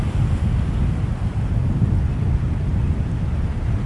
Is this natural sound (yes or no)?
yes